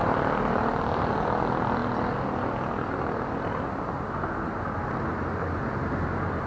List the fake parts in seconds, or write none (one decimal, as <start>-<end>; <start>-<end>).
0.0-1.1; 5.4-6.5